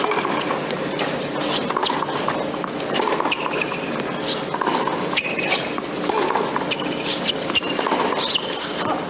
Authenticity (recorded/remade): recorded